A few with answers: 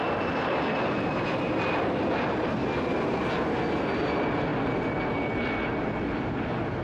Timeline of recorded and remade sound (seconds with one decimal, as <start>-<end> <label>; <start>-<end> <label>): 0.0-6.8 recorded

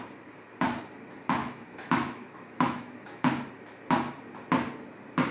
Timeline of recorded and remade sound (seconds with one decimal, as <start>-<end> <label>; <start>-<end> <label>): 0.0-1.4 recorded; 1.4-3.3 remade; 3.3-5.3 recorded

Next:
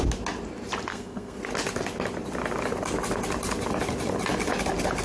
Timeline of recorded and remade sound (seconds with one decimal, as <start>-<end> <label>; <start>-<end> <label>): 0.0-0.9 recorded; 0.9-1.4 remade; 1.4-5.0 recorded

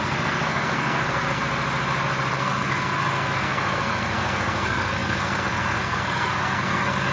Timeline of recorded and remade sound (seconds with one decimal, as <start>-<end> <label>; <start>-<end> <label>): 0.0-1.4 remade; 1.4-2.3 recorded; 2.3-7.1 remade

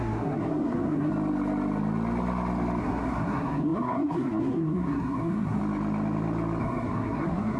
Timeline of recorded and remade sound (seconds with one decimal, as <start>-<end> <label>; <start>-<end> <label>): 0.0-1.1 remade; 1.1-2.8 recorded; 2.8-5.6 remade; 5.6-6.6 recorded; 6.6-7.6 remade

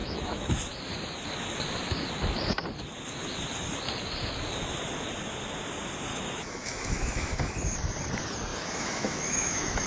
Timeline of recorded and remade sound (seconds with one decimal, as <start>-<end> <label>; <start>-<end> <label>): 0.0-0.6 remade; 0.6-6.1 recorded; 6.1-7.4 remade; 7.4-8.5 recorded; 8.5-9.9 remade